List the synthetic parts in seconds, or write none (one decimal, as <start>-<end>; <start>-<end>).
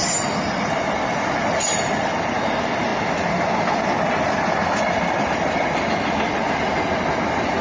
none